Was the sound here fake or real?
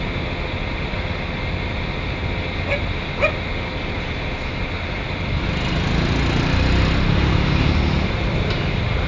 real